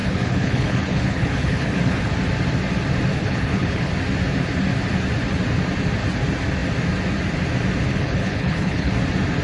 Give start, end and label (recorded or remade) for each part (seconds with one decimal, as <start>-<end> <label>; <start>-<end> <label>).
0.0-2.1 remade; 2.1-3.1 recorded; 3.1-3.9 remade; 3.9-7.9 recorded; 7.9-8.9 remade; 8.9-9.4 recorded